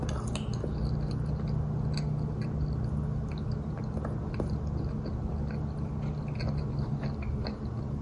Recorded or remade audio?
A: recorded